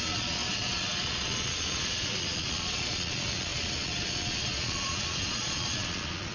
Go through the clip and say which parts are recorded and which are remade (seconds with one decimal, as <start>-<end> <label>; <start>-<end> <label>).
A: 0.0-6.3 remade